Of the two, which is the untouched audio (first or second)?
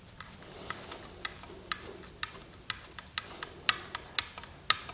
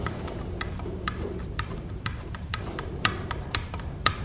first